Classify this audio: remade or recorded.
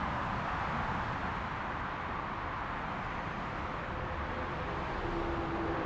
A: recorded